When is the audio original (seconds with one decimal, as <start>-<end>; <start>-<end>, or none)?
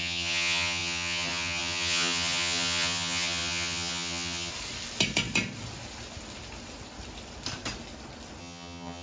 4.5-8.4